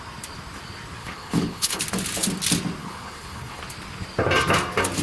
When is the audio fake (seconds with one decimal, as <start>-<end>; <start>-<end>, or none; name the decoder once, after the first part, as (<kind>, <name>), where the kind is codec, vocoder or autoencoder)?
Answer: 1.0-1.8 (codec, HILCodec); 2.8-3.6